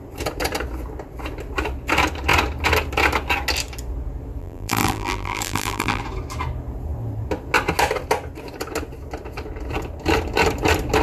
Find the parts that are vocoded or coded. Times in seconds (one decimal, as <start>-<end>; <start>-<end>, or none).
4.4-6.0